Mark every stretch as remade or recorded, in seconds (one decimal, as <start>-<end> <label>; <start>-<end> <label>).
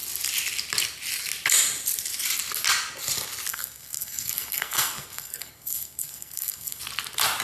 0.0-3.5 recorded; 3.5-6.8 remade; 6.8-7.4 recorded